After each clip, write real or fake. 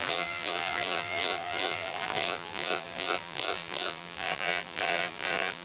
fake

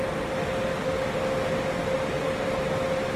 real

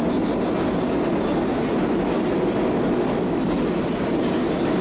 real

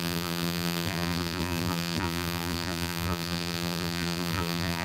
fake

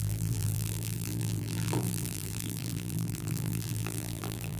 fake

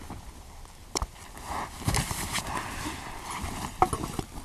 real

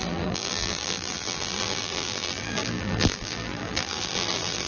fake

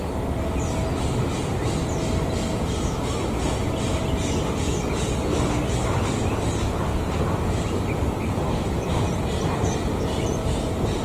real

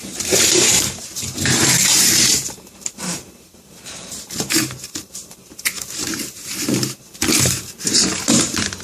fake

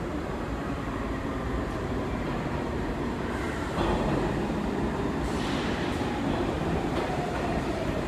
fake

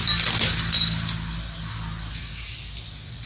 real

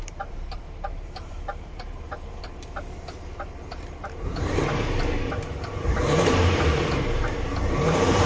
fake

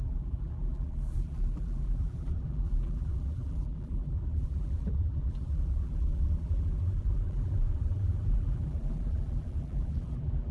fake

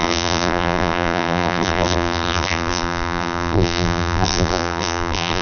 fake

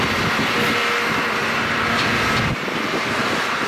real